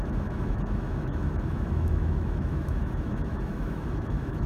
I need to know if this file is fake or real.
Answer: fake